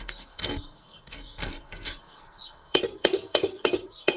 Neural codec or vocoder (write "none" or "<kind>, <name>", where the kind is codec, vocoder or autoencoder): codec, SNAC